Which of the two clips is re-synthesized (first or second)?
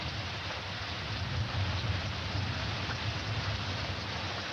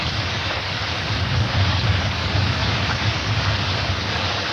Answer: second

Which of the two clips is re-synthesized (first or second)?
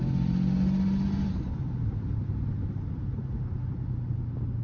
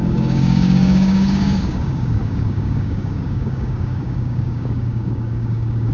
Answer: second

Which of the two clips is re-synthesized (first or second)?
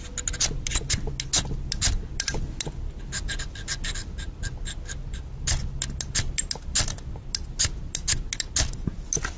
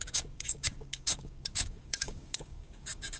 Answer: second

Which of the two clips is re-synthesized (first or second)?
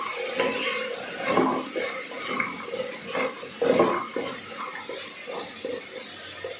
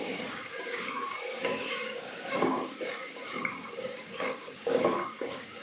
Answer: second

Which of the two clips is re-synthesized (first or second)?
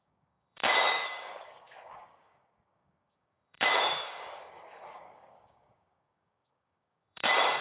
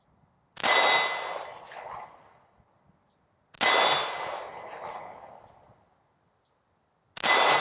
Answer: first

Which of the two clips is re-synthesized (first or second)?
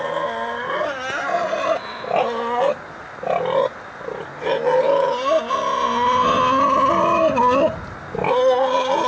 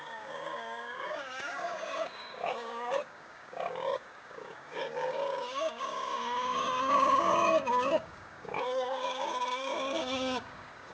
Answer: second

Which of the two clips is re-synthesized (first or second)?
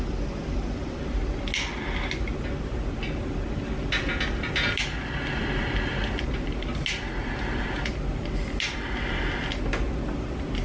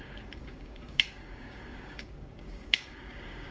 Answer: second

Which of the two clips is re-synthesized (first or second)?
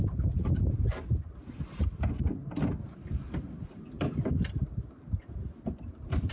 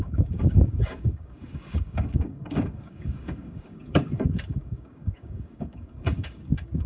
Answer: second